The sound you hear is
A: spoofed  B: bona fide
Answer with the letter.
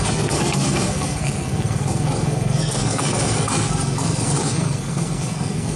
A